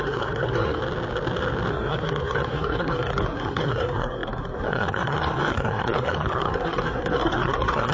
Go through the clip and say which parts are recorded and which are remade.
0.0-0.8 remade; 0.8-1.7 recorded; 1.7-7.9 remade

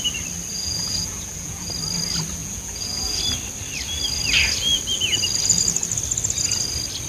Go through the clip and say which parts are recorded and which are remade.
0.0-0.5 recorded; 0.5-1.7 remade; 1.7-2.4 recorded; 2.4-3.2 remade; 3.2-7.1 recorded